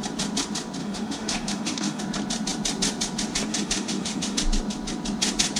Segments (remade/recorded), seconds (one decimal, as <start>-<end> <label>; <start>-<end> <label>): 0.0-0.8 recorded; 0.8-2.0 remade; 2.0-3.5 recorded; 3.5-4.4 remade; 4.4-5.6 recorded